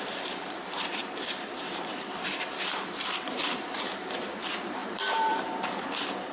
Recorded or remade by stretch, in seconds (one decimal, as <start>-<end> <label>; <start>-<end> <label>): 0.0-6.3 remade